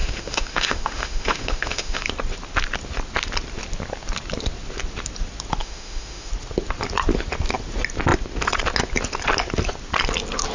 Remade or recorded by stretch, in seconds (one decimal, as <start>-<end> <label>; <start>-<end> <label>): 0.0-2.1 remade; 2.1-5.6 recorded; 5.6-6.3 remade; 6.3-10.5 recorded